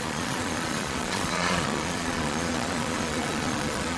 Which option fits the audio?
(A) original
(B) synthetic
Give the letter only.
B